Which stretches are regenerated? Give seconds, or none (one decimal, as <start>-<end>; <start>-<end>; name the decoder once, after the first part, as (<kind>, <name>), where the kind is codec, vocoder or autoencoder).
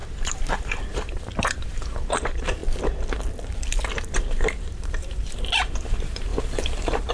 0.0-2.6 (vocoder, BigVGAN v2); 4.2-7.1